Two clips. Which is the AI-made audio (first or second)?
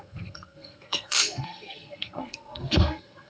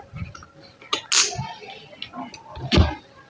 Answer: first